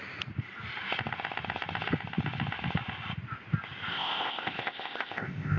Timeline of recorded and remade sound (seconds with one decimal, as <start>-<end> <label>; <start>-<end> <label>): 0.0-3.9 recorded; 3.9-5.6 remade